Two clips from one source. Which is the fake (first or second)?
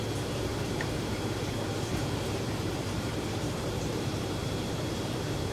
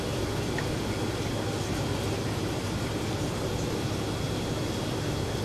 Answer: first